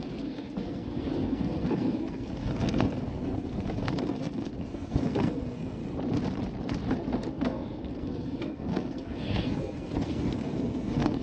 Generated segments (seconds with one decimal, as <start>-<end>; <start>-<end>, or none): 0.0-5.8; 7.3-11.2